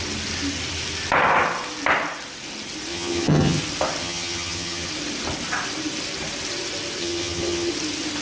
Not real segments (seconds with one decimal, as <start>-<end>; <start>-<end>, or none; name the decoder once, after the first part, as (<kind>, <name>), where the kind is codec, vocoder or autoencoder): 2.9-3.6 (vocoder, HiFi-GAN); 4.0-4.9; 7.0-7.7